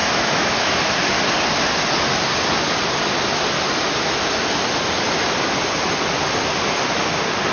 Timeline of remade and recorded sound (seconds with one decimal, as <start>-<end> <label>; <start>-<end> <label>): 0.0-0.8 remade; 0.8-7.5 recorded